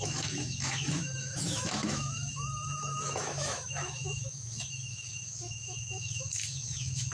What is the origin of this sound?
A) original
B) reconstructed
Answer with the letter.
B